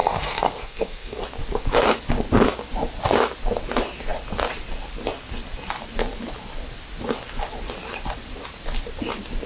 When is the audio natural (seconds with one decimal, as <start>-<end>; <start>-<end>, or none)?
1.2-9.5